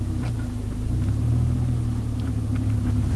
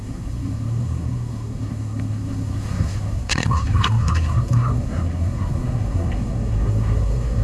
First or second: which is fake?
second